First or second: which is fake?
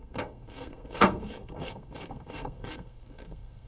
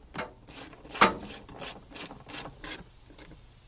first